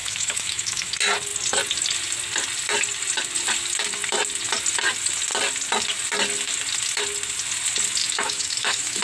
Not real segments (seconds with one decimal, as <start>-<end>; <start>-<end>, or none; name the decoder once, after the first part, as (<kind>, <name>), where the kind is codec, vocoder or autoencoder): 0.0-0.9 (autoencoder, DAC-VAE); 8.0-9.0